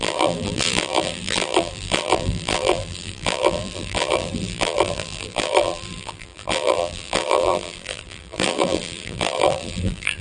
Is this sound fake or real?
fake